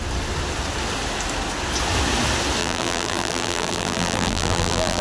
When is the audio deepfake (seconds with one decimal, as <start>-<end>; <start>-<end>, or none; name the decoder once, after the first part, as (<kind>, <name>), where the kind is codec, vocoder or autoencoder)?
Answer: 2.6-5.0 (vocoder, BigVGAN v2)

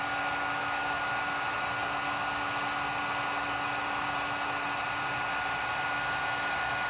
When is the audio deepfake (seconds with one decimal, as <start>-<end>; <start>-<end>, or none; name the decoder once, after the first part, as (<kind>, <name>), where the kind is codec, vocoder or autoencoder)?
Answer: 0.6-1.1 (autoencoder, DAC-VAE)

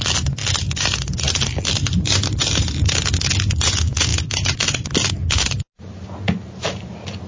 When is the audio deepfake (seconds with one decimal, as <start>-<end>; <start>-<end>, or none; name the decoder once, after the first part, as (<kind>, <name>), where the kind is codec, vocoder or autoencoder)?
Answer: 0.4-2.4 (vocoder, BigVGAN v2); 4.1-5.1

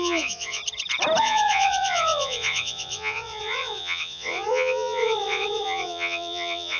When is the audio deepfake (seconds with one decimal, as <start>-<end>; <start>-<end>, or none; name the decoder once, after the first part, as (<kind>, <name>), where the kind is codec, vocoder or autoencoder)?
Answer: 0.0-0.6 (vocoder, Vocos); 1.2-6.8

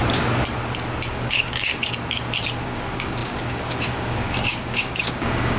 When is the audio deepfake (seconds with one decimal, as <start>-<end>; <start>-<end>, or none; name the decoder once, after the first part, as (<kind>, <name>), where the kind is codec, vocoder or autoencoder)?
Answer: 1.1-1.7 (codec, DAC); 2.6-5.6